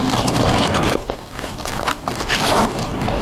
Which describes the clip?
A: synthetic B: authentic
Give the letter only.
A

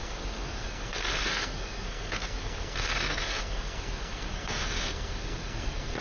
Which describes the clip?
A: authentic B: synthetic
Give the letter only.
B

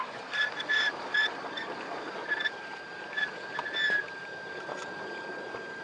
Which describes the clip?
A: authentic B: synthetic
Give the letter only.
B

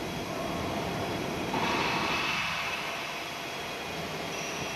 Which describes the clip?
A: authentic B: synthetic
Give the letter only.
A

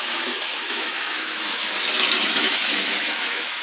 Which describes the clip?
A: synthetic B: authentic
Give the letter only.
A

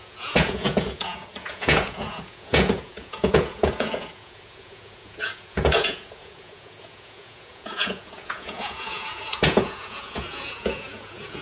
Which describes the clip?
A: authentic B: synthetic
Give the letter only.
B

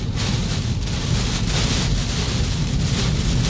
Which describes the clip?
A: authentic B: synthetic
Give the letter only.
A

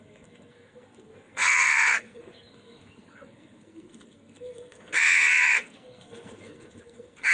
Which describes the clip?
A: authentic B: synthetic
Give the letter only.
B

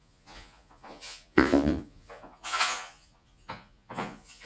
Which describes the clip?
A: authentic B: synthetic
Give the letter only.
B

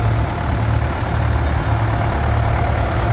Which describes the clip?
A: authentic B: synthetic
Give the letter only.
A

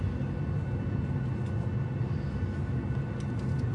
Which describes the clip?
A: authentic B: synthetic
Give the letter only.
A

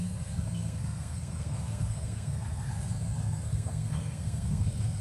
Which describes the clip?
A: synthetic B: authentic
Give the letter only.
A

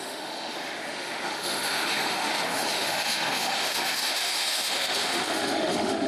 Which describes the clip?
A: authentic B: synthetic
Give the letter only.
B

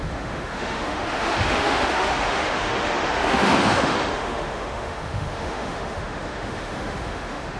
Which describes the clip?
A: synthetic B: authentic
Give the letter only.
A